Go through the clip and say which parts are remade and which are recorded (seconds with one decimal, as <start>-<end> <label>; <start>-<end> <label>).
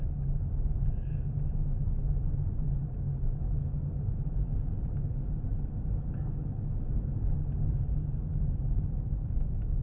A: 0.0-5.5 recorded; 5.5-6.0 remade; 6.0-9.8 recorded